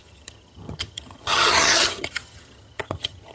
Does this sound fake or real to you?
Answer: fake